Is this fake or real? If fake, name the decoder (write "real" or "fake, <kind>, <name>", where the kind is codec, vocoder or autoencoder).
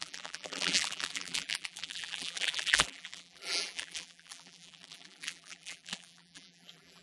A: fake, vocoder, BigVGAN v2